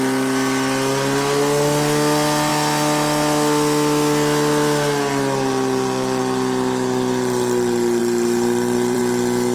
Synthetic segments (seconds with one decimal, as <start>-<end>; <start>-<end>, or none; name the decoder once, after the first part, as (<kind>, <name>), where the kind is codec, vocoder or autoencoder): 8.0-9.0 (vocoder, BigVGAN v2)